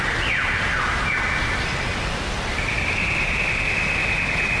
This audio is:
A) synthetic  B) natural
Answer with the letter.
B